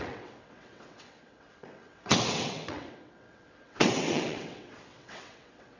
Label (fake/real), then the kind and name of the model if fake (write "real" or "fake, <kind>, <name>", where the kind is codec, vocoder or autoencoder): fake, vocoder, WaveNeXt